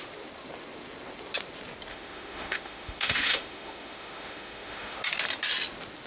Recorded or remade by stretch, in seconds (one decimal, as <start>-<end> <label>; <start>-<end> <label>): 0.0-1.9 recorded; 1.9-5.0 remade; 5.0-6.1 recorded